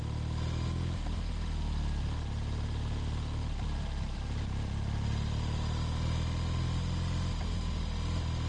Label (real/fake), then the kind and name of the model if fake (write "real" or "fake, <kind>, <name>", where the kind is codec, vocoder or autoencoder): real